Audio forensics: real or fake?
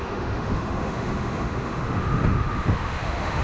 fake